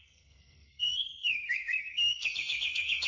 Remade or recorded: remade